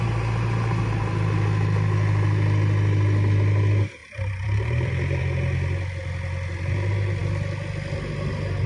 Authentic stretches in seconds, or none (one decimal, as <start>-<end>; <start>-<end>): 0.0-4.0; 5.2-8.7